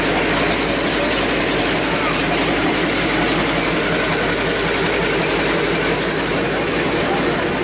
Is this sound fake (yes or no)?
no